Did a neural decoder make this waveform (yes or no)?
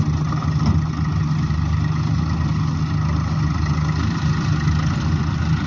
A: no